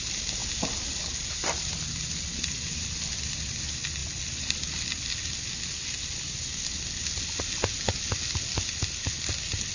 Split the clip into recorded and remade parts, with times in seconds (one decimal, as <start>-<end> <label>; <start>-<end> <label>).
0.0-9.7 recorded